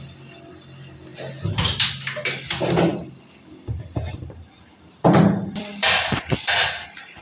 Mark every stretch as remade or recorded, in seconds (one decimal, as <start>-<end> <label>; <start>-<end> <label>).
0.0-2.9 recorded; 2.9-7.2 remade